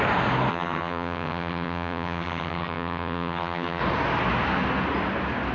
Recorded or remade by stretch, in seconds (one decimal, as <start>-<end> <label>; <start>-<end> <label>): 0.0-0.5 recorded; 0.5-3.8 remade; 3.8-5.5 recorded